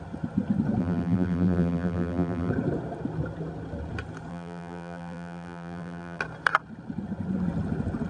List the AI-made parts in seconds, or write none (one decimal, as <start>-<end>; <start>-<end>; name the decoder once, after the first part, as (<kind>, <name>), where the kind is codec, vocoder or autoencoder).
0.8-2.5 (vocoder, BigVGAN v2); 4.3-6.2